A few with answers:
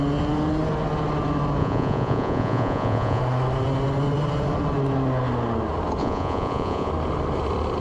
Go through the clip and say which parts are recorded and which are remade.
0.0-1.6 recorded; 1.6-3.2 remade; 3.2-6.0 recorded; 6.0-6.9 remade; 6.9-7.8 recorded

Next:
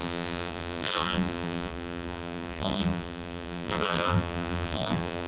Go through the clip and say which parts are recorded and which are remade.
0.0-5.3 remade

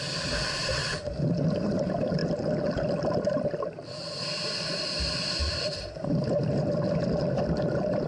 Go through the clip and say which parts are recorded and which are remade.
0.0-0.8 recorded; 0.8-1.8 remade; 1.8-2.2 recorded; 2.2-6.2 remade; 6.2-8.1 recorded

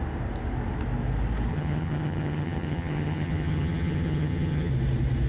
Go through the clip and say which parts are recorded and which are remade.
0.0-1.5 recorded; 1.5-4.7 remade; 4.7-5.3 recorded

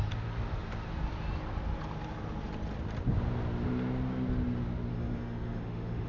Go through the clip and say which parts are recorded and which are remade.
0.0-4.9 recorded; 4.9-6.1 remade

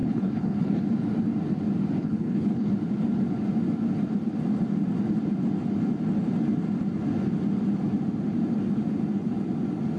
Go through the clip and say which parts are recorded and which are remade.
0.0-0.8 remade; 0.8-2.0 recorded; 2.0-2.7 remade; 2.7-10.0 recorded

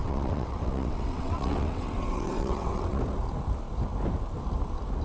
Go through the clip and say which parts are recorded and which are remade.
0.0-3.0 remade; 3.0-5.0 recorded